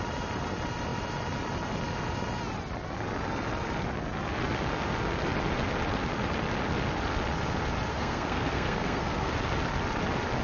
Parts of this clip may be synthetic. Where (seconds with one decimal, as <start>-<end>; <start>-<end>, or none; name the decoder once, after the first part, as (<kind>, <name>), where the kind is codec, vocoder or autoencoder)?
7.9-9.3 (codec, SNAC)